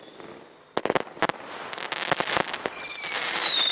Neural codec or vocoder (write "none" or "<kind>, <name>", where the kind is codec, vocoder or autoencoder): none